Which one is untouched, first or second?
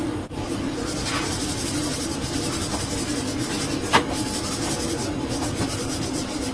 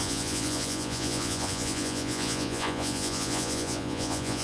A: first